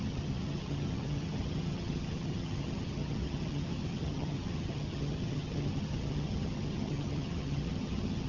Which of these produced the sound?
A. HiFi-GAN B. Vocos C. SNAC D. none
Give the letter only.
A